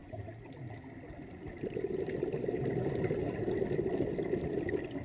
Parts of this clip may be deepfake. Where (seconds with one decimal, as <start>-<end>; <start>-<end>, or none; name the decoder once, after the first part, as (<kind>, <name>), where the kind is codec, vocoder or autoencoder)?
none